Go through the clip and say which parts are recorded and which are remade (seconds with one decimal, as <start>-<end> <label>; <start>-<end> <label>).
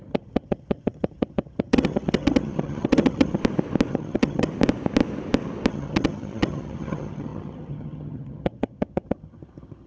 0.0-3.4 remade; 3.4-3.9 recorded; 3.9-4.5 remade; 4.5-5.7 recorded; 5.7-9.9 remade